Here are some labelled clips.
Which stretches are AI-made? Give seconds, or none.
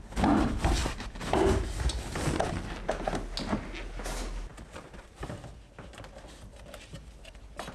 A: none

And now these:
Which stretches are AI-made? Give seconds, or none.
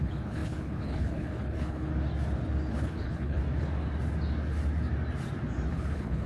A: 0.0-1.9 (codec, HILCodec); 2.7-3.4; 5.7-6.3